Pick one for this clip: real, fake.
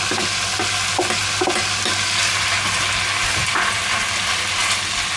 real